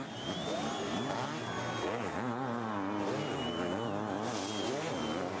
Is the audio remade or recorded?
recorded